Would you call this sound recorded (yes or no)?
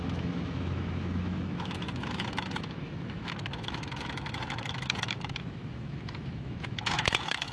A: no